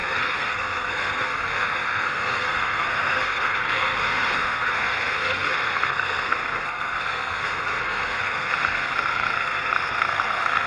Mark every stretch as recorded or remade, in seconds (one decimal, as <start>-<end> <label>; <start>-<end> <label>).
0.0-10.7 remade